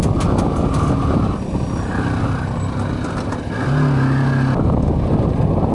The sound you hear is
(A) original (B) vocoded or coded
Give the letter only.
A